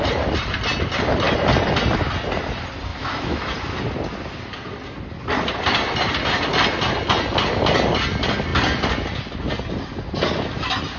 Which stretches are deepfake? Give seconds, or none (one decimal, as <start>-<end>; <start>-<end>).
2.9-3.5